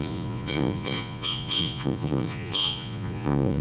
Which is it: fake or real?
fake